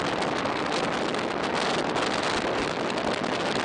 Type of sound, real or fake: real